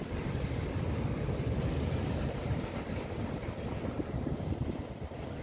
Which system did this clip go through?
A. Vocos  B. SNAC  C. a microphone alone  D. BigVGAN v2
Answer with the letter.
D